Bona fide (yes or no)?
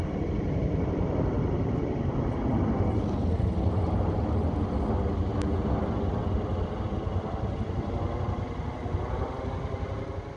yes